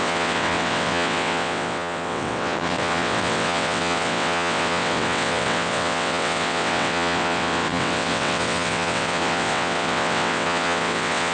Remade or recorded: remade